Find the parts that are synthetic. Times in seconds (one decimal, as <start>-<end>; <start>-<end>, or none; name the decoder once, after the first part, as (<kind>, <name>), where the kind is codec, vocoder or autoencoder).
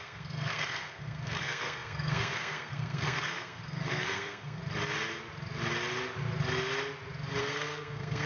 0.0-4.6 (codec, SNAC); 7.4-8.3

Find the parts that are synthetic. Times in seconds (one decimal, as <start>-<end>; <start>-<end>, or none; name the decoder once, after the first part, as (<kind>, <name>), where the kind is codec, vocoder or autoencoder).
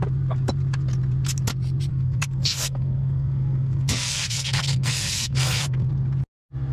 1.9-5.9 (codec, SNAC)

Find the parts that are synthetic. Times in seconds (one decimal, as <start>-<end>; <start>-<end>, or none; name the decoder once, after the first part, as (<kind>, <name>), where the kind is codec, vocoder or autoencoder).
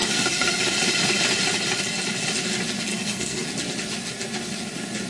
0.0-0.6 (codec, SNAC); 2.9-3.5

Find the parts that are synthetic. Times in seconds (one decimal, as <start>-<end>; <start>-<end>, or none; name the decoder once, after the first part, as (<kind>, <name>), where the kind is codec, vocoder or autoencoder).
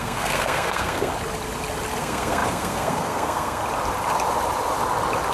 0.0-1.1 (codec, SNAC); 2.0-3.6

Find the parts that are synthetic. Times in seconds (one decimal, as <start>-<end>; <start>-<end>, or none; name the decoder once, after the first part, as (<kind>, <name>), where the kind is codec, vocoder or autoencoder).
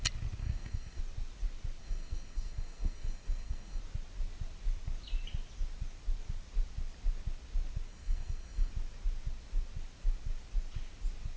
0.4-1.0 (codec, SNAC); 1.8-3.8; 7.9-8.7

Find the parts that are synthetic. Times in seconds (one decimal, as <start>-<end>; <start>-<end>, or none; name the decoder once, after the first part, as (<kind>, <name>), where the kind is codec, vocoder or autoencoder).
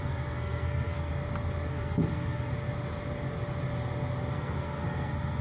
0.0-1.1 (codec, SNAC); 1.7-2.5; 4.3-5.4